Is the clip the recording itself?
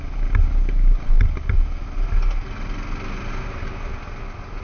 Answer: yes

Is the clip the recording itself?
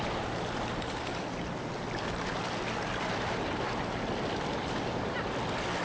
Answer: yes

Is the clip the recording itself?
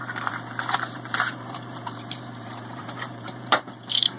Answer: no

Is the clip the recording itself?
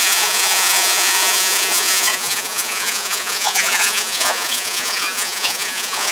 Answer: no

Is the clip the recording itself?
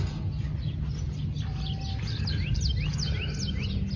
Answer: yes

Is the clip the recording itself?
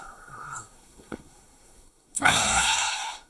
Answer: no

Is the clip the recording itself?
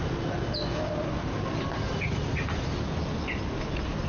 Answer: yes